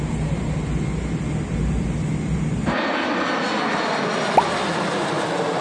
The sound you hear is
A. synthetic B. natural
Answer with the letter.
B